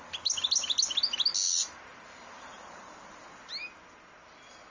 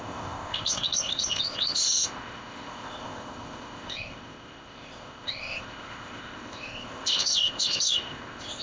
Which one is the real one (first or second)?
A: first